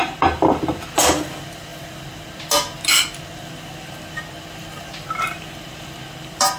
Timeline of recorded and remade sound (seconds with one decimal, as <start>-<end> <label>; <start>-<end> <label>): 0.0-6.6 recorded